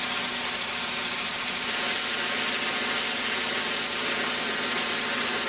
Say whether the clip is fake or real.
real